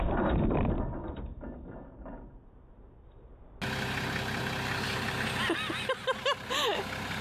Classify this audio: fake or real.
real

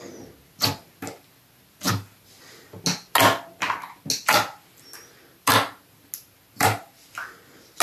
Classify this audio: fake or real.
real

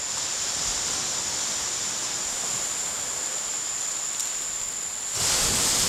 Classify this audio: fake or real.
real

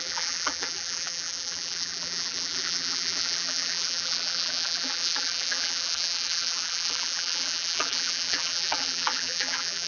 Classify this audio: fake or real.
fake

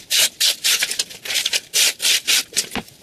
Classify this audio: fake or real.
fake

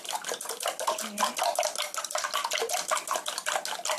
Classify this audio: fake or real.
real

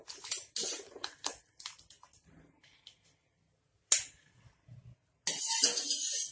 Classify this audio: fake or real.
real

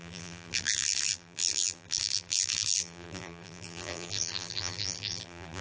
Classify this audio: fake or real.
fake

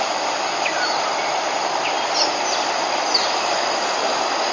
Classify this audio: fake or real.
real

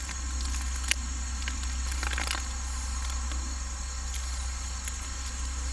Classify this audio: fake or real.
real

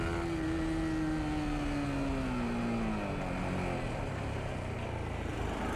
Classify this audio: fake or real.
real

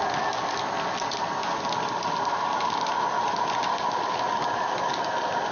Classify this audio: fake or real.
real